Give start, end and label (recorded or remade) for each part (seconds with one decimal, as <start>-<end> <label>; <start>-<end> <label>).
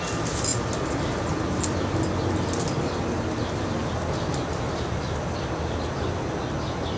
0.0-7.0 recorded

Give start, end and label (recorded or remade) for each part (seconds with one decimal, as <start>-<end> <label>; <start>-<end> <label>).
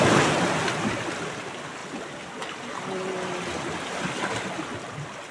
0.0-5.3 recorded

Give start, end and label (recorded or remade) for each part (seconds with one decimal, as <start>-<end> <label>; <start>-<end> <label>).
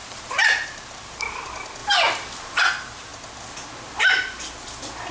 0.0-1.4 remade; 1.4-5.1 recorded